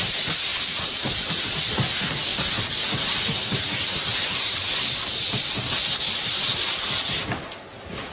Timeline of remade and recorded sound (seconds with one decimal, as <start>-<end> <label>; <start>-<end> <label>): 0.0-0.5 recorded; 0.5-1.7 remade; 1.7-2.3 recorded; 2.3-7.2 remade; 7.2-8.1 recorded